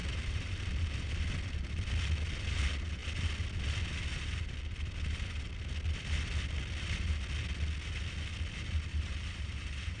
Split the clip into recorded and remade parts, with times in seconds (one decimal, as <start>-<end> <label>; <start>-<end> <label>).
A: 0.0-1.2 remade; 1.2-8.9 recorded; 8.9-10.0 remade